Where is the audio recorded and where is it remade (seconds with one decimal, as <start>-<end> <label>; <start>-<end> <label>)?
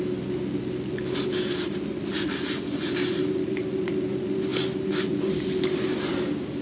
0.0-6.6 recorded